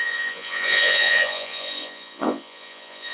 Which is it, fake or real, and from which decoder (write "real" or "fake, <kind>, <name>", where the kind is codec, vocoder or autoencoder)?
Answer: fake, vocoder, Vocos